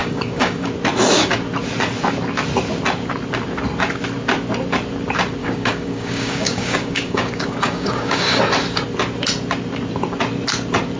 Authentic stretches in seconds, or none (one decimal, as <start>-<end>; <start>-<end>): 0.7-5.4; 8.4-11.0